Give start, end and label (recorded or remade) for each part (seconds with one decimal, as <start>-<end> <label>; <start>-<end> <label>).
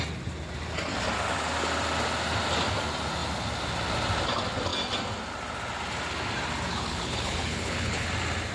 0.0-6.7 recorded; 6.7-8.1 remade; 8.1-8.5 recorded